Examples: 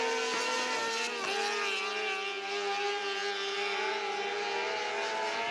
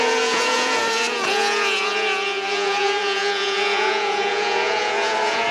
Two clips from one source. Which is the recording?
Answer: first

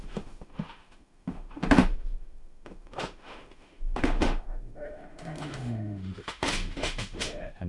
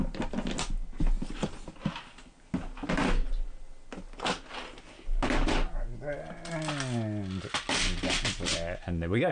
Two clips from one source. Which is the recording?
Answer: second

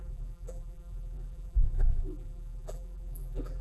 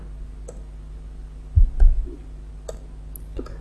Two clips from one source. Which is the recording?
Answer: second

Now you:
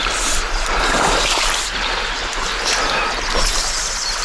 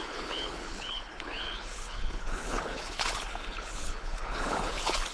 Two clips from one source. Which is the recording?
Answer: first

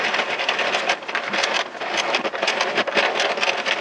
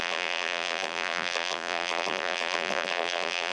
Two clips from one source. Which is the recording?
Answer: first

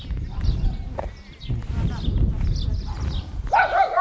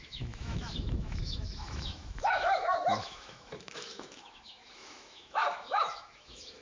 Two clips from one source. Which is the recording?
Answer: first